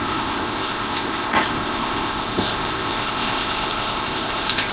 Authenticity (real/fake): fake